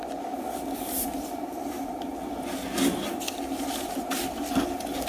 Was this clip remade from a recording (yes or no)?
yes